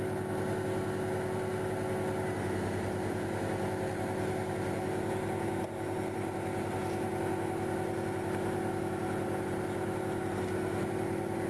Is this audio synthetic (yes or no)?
no